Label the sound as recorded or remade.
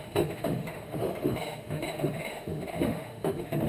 remade